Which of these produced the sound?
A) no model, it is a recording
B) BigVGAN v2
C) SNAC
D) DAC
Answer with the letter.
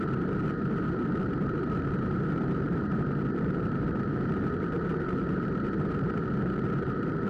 B